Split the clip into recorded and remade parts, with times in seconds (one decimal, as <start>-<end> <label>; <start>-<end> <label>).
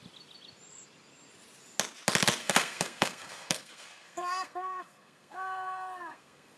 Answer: 0.0-2.4 recorded; 2.4-6.6 remade